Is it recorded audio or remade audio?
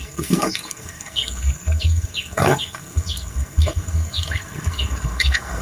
remade